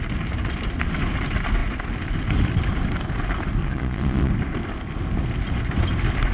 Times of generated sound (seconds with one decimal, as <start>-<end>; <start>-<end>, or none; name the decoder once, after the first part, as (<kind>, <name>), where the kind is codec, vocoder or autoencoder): 3.6-4.3 (vocoder, Vocos)